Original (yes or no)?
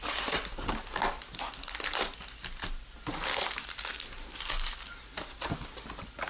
yes